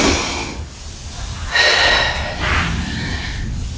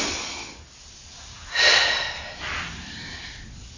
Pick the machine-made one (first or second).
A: second